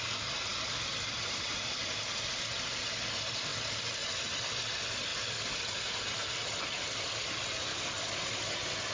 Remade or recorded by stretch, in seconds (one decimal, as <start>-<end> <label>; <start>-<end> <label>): 0.0-8.9 recorded